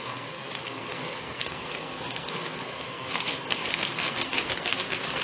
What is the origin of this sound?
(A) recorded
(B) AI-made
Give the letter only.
B